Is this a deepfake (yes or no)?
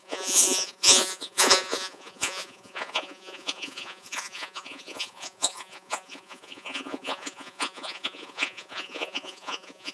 yes